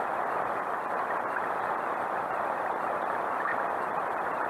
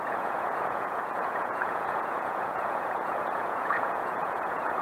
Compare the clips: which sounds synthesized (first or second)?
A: second